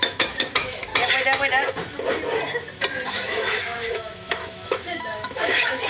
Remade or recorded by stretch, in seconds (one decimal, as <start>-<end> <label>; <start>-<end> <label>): 0.0-0.9 remade; 0.9-3.1 recorded; 3.1-5.9 remade